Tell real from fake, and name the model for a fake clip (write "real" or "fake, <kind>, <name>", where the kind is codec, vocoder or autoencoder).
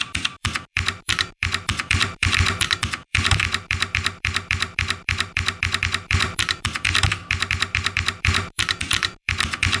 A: fake, vocoder, BigVGAN v2